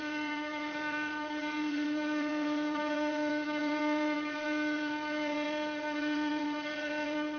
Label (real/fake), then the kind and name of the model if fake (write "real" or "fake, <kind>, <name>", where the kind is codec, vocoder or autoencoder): fake, vocoder, WaveNeXt